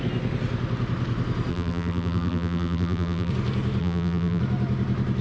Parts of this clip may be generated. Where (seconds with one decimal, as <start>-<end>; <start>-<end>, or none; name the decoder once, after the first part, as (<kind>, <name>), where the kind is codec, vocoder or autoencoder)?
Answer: 1.5-3.3 (vocoder, BigVGAN v2); 3.8-4.4